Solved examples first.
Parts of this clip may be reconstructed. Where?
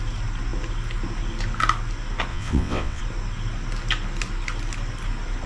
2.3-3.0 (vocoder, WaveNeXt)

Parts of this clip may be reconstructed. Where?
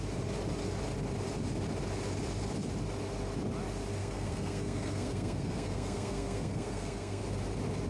4.0-7.2 (codec, SNAC)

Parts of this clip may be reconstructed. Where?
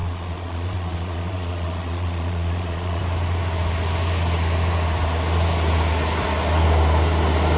0.0-3.0 (vocoder, Vocos)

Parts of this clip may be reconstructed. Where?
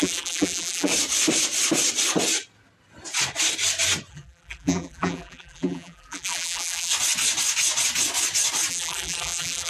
0.0-0.9 (vocoder, BigVGAN v2); 4.1-6.9; 8.7-9.7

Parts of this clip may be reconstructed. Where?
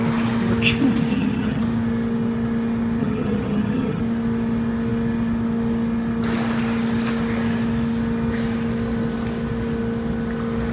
1.1-1.6 (vocoder, HiFi-GAN); 3.0-4.0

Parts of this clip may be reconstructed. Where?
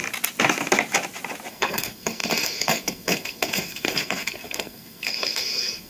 1.5-5.9 (codec, SNAC)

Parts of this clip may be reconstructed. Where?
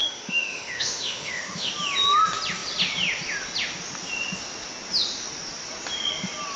0.0-1.7 (autoencoder, DAC-VAE)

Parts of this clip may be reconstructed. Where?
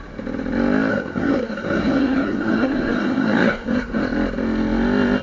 0.9-4.0 (codec, SNAC)